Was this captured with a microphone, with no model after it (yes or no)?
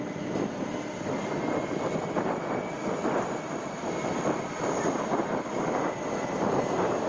yes